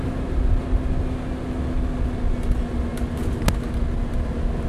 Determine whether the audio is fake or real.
real